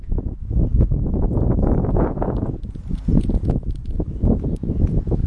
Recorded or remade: remade